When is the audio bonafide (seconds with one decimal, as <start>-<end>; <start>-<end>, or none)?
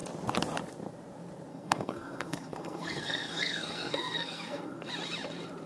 0.0-1.5; 4.9-5.7